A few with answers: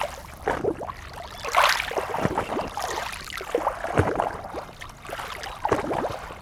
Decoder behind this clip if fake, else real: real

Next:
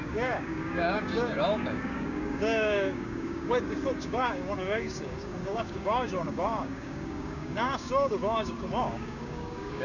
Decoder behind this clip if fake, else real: fake, codec, DAC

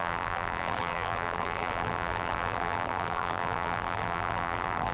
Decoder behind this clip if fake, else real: fake, vocoder, BigVGAN v2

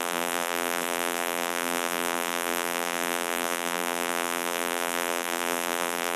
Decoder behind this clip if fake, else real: fake, vocoder, BigVGAN v2